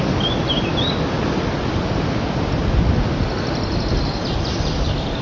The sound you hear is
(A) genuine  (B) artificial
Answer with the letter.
A